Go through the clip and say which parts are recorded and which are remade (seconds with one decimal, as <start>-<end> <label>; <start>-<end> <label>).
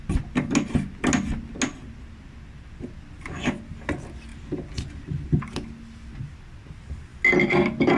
0.0-4.3 recorded; 4.3-5.4 remade; 5.4-8.0 recorded